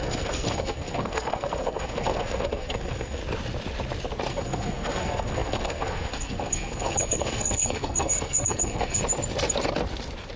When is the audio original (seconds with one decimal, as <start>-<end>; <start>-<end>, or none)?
3.2-4.3; 9.0-10.4

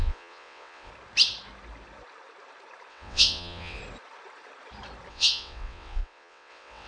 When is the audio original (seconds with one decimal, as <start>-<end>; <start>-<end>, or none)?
0.9-2.9; 3.8-5.1

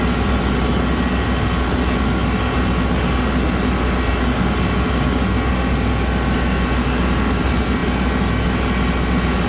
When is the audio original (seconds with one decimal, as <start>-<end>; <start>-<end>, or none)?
0.0-9.5